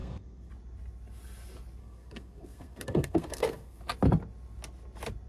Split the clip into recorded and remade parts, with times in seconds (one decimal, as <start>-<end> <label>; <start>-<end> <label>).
0.0-0.5 remade; 0.5-1.8 recorded; 1.8-3.8 remade; 3.8-5.3 recorded